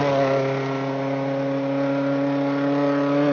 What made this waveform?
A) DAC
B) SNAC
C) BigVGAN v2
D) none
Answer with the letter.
D